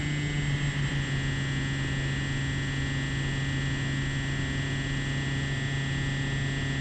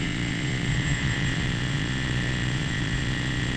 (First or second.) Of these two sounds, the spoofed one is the second